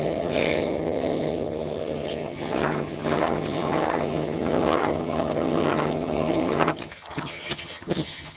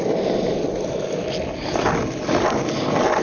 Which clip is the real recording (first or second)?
second